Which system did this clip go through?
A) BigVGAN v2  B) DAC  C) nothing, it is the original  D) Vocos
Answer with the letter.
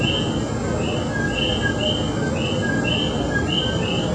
C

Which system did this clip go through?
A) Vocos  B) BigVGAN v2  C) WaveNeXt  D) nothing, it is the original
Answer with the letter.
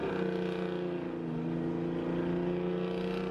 D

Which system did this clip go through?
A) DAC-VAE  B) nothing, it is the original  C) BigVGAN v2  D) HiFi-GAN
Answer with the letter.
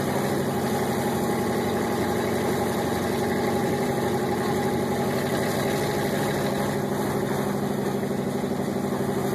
B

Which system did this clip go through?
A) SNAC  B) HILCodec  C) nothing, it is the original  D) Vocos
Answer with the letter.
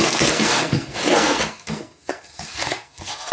A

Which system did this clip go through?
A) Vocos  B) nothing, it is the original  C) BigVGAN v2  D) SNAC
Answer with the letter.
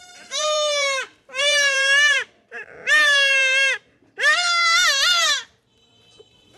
C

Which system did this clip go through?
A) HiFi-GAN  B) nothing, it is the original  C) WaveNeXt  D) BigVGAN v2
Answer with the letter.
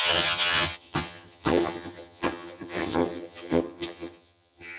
A